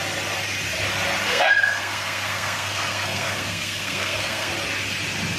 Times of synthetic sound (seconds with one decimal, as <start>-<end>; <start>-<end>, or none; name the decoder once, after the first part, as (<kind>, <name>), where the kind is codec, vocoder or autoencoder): 1.3-4.5 (codec, SNAC)